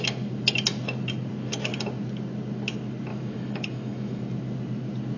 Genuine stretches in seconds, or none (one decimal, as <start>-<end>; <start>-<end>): 0.0-3.1; 4.2-5.2